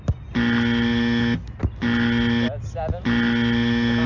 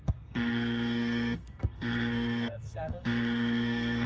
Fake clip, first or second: second